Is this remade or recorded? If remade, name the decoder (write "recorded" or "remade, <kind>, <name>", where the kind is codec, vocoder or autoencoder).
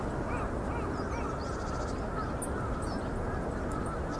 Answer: recorded